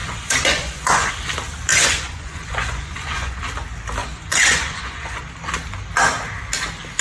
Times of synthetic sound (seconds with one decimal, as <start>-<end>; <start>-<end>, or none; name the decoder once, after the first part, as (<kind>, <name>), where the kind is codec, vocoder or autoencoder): 0.0-1.1 (vocoder, Vocos); 1.7-3.4; 4.0-5.2